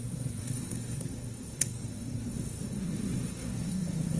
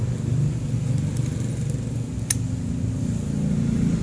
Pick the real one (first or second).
second